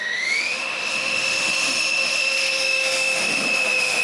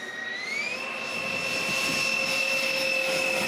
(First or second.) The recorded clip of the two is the second